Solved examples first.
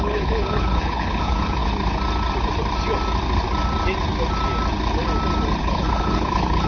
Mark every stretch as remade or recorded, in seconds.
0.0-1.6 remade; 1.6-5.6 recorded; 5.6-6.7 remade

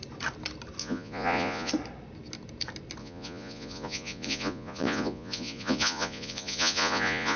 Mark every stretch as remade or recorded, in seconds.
0.0-0.8 recorded; 0.8-1.7 remade; 1.7-3.0 recorded; 3.0-7.4 remade

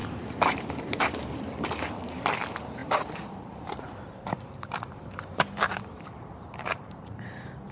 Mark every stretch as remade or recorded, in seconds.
0.0-2.3 remade; 2.3-2.8 recorded; 2.8-7.3 remade; 7.3-7.7 recorded

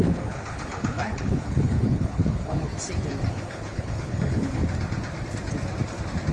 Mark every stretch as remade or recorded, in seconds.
0.0-2.7 remade; 2.7-3.3 recorded; 3.3-4.6 remade; 4.6-6.3 recorded

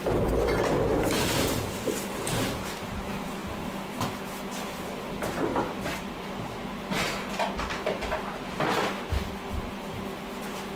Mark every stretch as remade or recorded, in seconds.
0.0-10.8 recorded

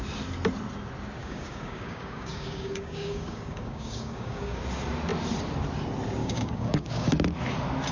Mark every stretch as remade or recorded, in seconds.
0.0-1.2 recorded; 1.2-4.6 remade; 4.6-6.2 recorded; 6.2-7.1 remade; 7.1-7.9 recorded

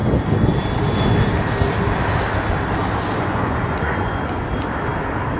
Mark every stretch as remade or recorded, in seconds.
0.0-3.2 recorded; 3.2-4.5 remade; 4.5-5.4 recorded